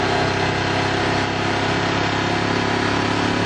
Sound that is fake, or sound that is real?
real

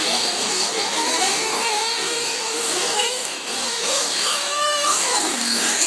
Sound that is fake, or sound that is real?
fake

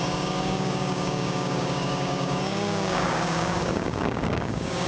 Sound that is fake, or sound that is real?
fake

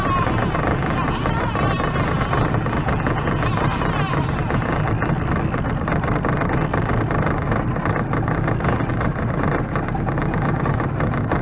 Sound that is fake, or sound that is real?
real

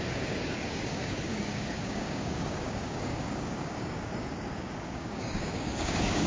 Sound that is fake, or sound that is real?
fake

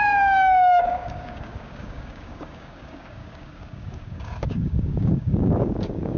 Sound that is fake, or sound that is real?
fake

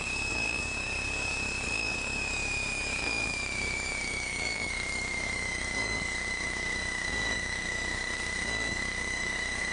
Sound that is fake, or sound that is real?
fake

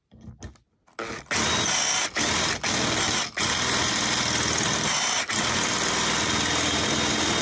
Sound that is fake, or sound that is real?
real